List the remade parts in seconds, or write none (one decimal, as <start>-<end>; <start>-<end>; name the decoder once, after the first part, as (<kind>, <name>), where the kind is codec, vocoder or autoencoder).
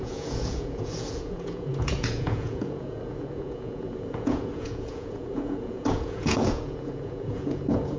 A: 0.0-8.0 (vocoder, Vocos)